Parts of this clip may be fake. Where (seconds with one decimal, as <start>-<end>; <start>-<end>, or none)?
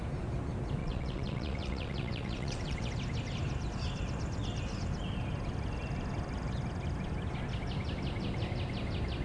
0.8-2.9